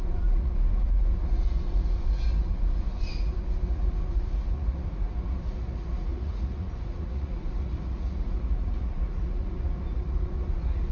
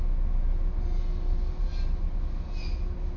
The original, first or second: second